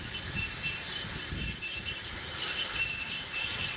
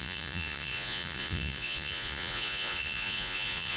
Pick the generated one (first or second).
second